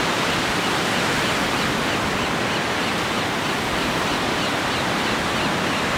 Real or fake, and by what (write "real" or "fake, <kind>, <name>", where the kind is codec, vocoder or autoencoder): fake, vocoder, BigVGAN v2